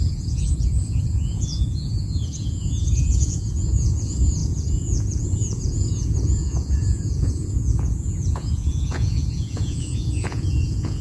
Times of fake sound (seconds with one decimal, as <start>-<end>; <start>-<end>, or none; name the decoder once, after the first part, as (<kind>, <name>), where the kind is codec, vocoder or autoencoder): 0.0-11.0 (vocoder, Vocos)